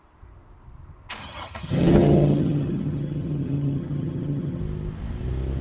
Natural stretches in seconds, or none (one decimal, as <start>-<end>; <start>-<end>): 0.0-1.2; 4.6-5.6